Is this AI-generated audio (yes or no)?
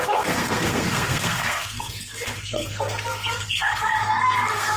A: yes